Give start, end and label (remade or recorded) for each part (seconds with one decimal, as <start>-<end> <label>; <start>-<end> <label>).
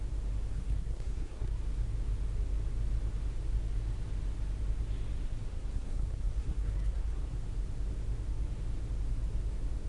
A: 0.0-0.5 recorded; 0.5-1.6 remade; 1.6-5.5 recorded; 5.5-7.3 remade; 7.3-9.9 recorded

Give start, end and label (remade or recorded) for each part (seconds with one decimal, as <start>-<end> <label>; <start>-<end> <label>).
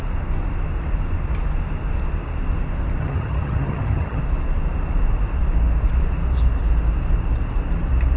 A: 0.0-3.0 recorded; 3.0-4.2 remade; 4.2-8.2 recorded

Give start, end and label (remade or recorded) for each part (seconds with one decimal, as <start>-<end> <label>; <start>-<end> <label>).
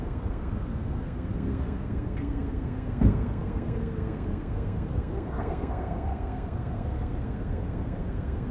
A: 0.0-8.5 remade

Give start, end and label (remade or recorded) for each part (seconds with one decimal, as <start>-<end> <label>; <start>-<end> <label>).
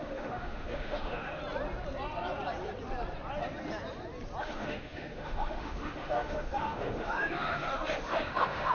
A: 0.0-1.4 remade; 1.4-4.4 recorded; 4.4-8.7 remade